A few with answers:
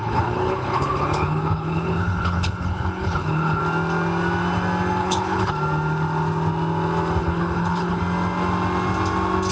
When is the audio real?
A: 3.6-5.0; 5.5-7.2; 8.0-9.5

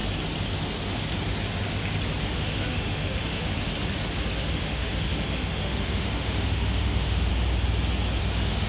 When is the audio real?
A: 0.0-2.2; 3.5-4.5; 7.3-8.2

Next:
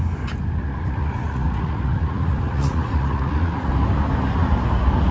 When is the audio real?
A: 0.0-0.6; 3.7-5.1